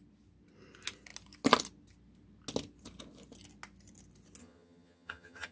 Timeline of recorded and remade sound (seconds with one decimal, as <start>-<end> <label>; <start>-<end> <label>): 0.0-4.4 recorded; 4.4-5.5 remade